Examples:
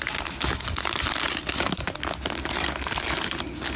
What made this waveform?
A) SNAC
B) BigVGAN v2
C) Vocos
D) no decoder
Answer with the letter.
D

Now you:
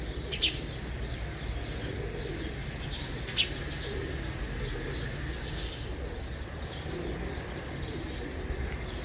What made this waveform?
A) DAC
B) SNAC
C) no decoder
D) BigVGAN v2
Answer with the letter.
C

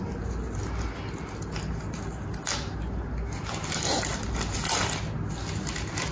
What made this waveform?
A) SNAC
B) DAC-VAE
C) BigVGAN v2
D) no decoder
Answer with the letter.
D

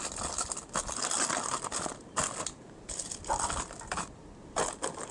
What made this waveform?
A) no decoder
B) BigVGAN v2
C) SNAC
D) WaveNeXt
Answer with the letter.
A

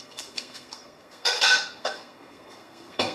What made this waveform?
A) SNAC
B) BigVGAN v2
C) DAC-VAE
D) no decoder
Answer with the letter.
A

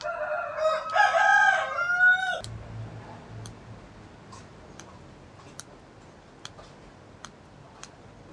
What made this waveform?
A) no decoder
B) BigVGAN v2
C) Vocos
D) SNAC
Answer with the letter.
A